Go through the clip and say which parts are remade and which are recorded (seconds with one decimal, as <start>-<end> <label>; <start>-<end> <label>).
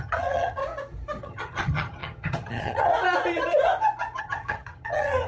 0.0-0.6 remade; 0.6-1.2 recorded; 1.2-2.9 remade; 2.9-4.2 recorded; 4.2-5.3 remade